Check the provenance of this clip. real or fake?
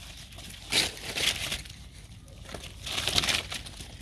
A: real